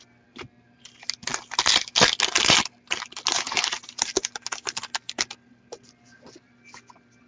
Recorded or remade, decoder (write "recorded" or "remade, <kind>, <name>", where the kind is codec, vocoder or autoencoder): recorded